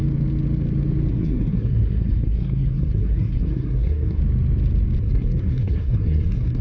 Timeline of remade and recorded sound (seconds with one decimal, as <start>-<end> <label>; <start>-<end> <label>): 0.0-1.1 recorded; 1.1-4.2 remade; 4.2-5.0 recorded; 5.0-6.6 remade